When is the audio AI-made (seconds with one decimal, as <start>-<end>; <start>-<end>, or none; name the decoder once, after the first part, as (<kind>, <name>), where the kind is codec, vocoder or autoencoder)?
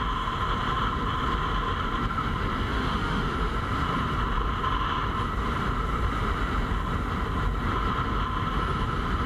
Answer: 2.7-3.3 (autoencoder, DAC-VAE)